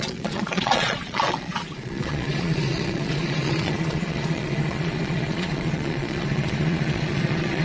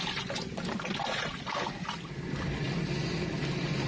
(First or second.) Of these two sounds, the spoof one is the first